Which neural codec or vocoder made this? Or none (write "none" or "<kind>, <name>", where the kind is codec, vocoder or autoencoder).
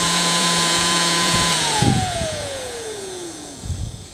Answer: vocoder, Vocos